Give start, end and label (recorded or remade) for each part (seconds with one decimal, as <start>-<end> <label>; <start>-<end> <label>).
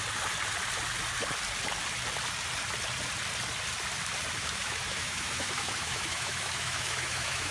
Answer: 0.0-4.4 recorded; 4.4-7.5 remade